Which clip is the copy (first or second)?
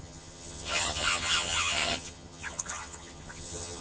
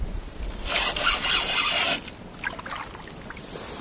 first